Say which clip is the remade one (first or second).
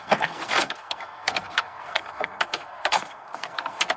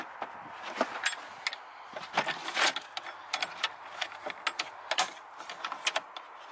first